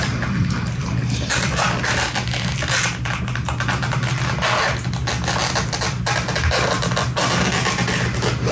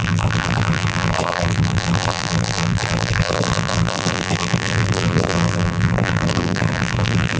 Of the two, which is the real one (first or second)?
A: first